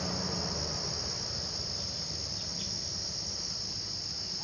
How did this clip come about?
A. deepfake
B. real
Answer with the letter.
B